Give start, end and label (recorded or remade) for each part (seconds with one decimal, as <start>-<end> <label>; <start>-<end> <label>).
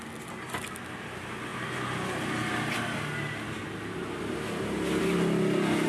0.0-5.9 recorded